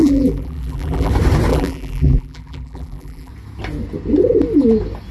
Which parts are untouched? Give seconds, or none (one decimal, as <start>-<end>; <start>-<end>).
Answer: 1.1-1.5; 3.3-5.1